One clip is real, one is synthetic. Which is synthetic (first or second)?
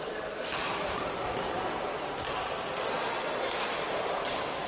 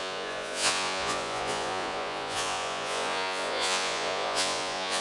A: second